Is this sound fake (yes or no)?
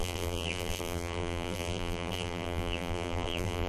yes